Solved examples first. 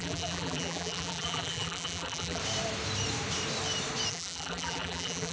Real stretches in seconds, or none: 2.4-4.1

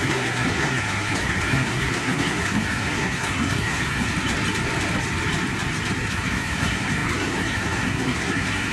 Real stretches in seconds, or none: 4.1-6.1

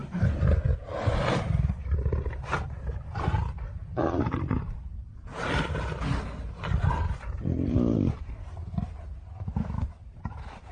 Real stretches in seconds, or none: 0.0-10.7